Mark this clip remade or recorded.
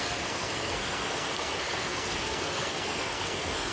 remade